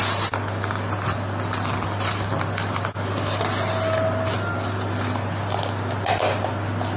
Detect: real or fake real